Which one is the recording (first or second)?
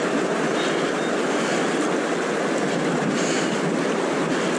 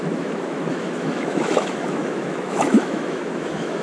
first